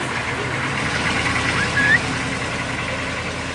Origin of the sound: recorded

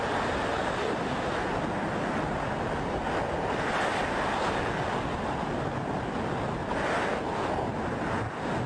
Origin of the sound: recorded